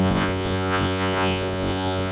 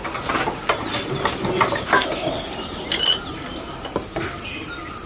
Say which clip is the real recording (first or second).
second